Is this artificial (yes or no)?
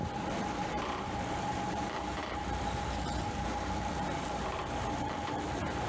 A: yes